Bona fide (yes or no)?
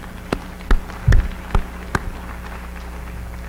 yes